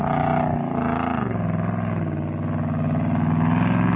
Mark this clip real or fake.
real